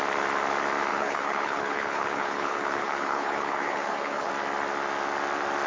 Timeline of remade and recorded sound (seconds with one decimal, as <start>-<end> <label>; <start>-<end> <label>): 0.0-0.9 recorded; 0.9-4.3 remade; 4.3-5.7 recorded